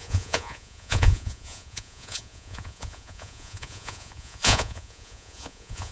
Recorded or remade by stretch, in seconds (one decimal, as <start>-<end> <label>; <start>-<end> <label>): 0.0-5.9 remade